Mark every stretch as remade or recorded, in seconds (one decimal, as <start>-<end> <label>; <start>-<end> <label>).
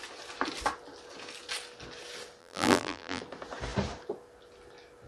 0.0-2.4 recorded; 2.4-3.2 remade; 3.2-5.1 recorded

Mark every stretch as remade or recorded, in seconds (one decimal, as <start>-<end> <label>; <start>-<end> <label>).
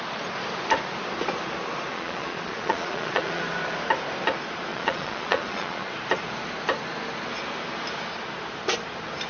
0.0-1.9 recorded; 1.9-3.4 remade; 3.4-4.7 recorded; 4.7-5.9 remade; 5.9-9.3 recorded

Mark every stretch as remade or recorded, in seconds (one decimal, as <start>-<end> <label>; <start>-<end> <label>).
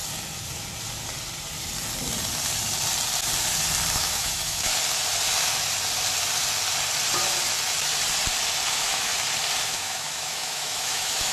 0.0-3.9 recorded; 3.9-4.7 remade; 4.7-8.7 recorded; 8.7-9.1 remade; 9.1-9.7 recorded; 9.7-11.3 remade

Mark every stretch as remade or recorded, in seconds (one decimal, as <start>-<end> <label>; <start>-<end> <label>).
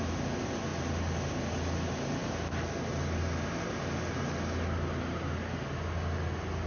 0.0-6.7 recorded